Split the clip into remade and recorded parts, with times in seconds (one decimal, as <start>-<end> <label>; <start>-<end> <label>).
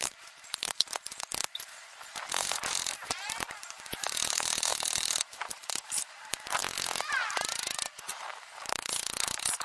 0.0-1.3 remade; 1.3-2.3 recorded; 2.3-6.6 remade; 6.6-8.1 recorded; 8.1-9.6 remade